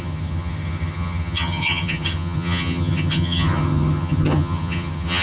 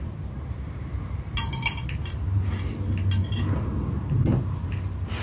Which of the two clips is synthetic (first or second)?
first